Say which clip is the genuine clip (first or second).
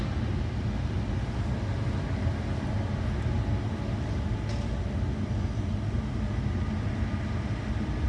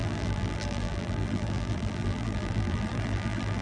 first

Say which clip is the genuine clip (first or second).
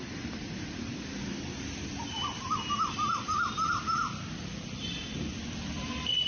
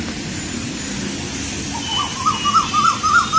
second